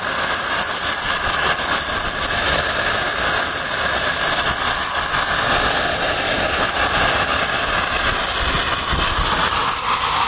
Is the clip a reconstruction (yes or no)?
no